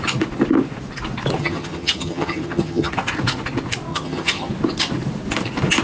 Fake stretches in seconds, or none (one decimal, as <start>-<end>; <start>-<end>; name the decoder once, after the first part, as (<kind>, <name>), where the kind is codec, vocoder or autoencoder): 1.4-2.9 (vocoder, HiFi-GAN); 3.9-4.5